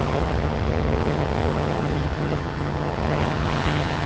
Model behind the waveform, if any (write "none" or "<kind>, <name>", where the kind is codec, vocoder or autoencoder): vocoder, HiFi-GAN